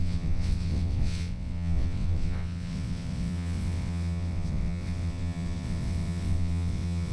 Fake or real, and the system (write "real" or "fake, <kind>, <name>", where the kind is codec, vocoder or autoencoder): fake, vocoder, WaveNeXt